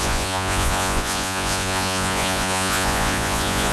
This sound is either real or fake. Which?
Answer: fake